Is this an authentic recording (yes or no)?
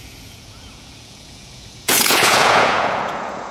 no